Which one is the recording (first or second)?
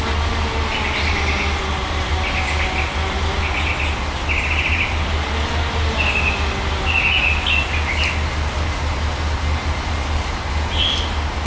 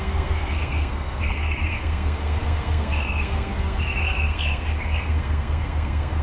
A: first